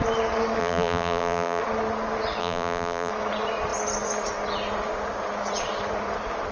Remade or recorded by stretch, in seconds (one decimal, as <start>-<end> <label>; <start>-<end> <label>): 0.0-0.6 recorded; 0.6-1.6 remade; 1.6-2.4 recorded; 2.4-3.1 remade; 3.1-6.5 recorded